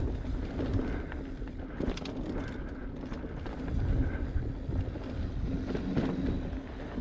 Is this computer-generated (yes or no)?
no